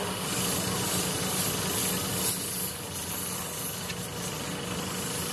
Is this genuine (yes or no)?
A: yes